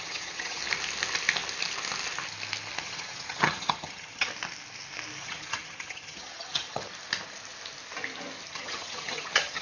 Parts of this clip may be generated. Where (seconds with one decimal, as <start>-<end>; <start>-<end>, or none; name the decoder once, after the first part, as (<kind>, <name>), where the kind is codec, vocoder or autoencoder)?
0.0-0.6 (vocoder, HiFi-GAN); 2.8-4.3; 5.2-6.9; 8.5-9.6